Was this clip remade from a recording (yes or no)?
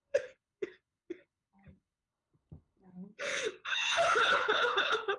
yes